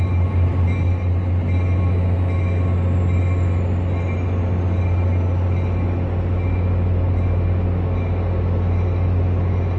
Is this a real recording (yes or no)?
yes